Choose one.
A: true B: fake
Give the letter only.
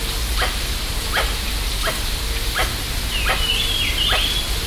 A